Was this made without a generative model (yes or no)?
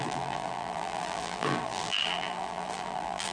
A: no